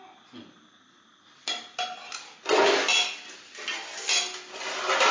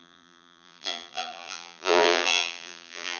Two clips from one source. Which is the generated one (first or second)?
second